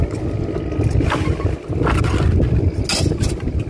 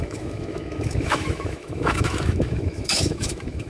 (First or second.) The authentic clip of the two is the first